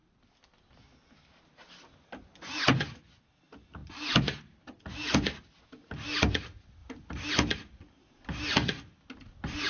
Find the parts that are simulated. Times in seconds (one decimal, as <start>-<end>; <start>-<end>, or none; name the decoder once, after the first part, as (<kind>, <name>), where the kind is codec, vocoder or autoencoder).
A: none